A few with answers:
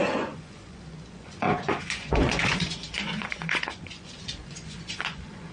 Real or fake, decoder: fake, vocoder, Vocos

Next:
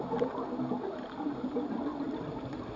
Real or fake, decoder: real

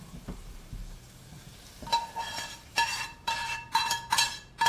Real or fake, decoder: fake, vocoder, BigVGAN v2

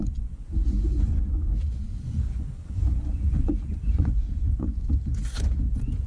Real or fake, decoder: fake, vocoder, Vocos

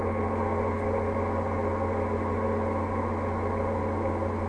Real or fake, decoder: real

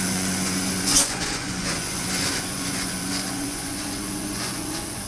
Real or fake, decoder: fake, vocoder, Vocos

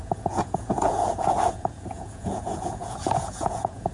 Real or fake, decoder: fake, vocoder, Vocos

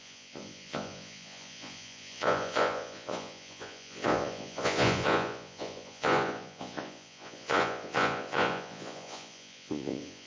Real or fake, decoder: fake, vocoder, Vocos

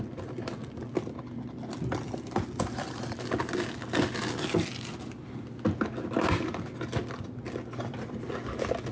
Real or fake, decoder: real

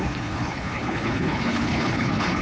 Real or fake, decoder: fake, codec, HILCodec